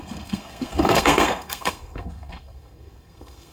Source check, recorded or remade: remade